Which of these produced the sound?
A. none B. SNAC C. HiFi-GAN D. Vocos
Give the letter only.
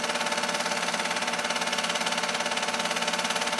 A